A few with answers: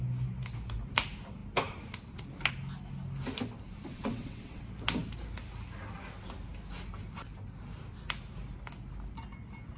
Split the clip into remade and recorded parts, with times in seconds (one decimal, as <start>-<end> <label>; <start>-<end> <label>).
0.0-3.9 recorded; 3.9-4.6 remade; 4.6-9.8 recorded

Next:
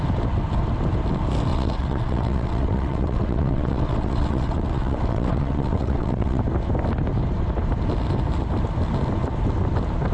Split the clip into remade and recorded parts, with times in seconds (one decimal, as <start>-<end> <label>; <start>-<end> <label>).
0.0-1.5 recorded; 1.5-6.4 remade; 6.4-10.1 recorded

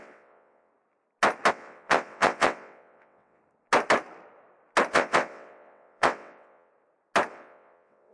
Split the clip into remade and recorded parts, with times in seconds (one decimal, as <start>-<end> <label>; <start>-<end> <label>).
0.0-0.7 remade; 0.7-1.5 recorded; 1.5-3.4 remade; 3.4-4.9 recorded; 4.9-6.7 remade; 6.7-7.3 recorded; 7.3-8.1 remade

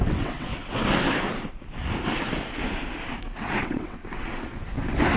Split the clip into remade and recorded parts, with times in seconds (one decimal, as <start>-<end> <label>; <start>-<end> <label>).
0.0-0.5 remade; 0.5-3.6 recorded; 3.6-4.0 remade; 4.0-5.2 recorded

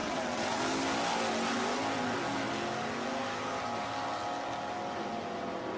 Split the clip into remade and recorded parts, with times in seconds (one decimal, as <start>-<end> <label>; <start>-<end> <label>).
0.0-0.6 remade; 0.6-5.8 recorded

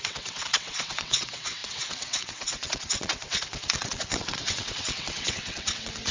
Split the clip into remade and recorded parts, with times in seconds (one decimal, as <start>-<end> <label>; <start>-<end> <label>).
0.0-6.1 remade